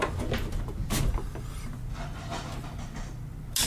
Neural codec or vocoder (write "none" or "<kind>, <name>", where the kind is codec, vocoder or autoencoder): none